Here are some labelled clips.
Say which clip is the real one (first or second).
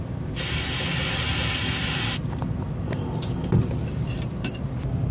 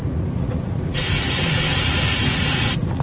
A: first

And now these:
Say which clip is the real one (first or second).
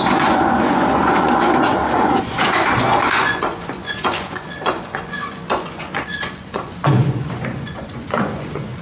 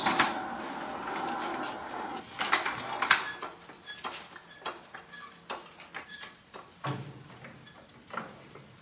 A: second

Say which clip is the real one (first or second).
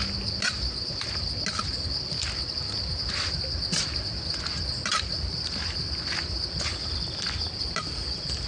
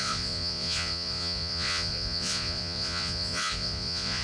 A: first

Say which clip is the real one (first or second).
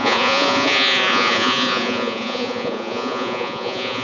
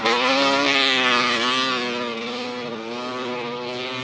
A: second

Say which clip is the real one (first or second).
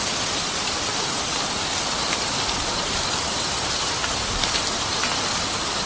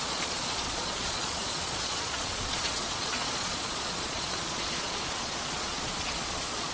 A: first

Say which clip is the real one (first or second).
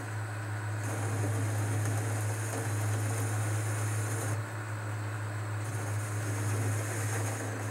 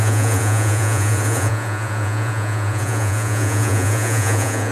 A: first